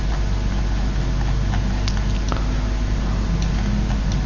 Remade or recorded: recorded